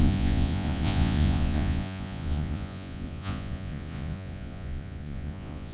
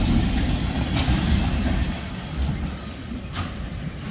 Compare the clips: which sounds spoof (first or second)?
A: first